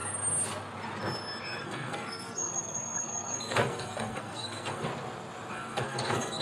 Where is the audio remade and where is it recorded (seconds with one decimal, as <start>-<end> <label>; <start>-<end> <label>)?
0.0-1.6 recorded; 1.6-4.9 remade; 4.9-5.5 recorded; 5.5-6.4 remade